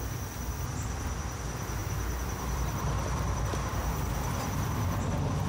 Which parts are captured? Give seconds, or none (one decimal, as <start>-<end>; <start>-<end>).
0.0-1.8; 3.4-3.8; 4.5-5.5